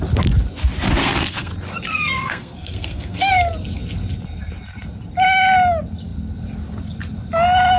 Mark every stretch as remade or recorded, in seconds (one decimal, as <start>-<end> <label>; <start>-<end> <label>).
0.0-1.0 recorded; 1.0-1.5 remade; 1.5-1.9 recorded; 1.9-3.3 remade; 3.3-7.8 recorded